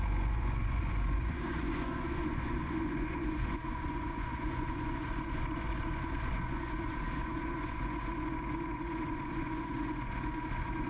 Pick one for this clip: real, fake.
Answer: fake